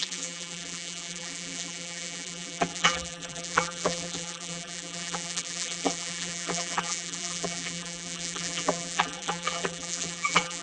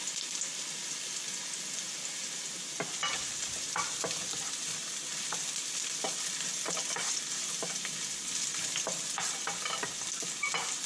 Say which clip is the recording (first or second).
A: second